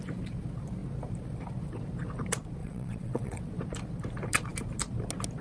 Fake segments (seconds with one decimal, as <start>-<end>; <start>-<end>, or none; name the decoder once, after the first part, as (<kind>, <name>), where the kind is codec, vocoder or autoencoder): 2.6-3.4 (vocoder, WaveNeXt)